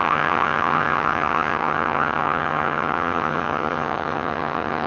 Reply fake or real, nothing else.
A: fake